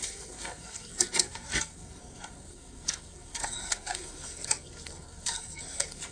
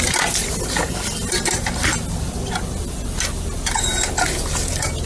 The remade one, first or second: first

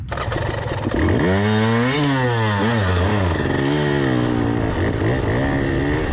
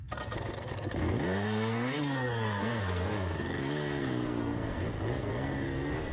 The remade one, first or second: second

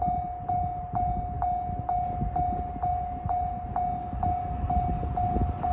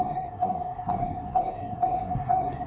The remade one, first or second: second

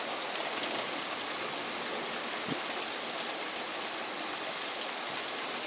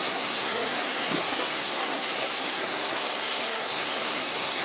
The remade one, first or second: second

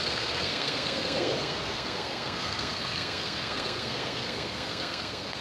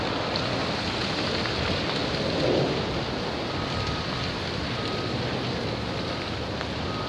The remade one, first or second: first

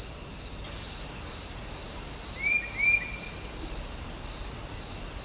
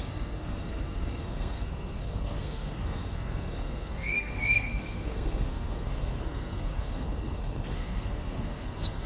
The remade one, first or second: second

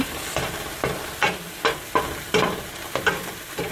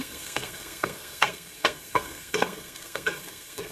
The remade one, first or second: second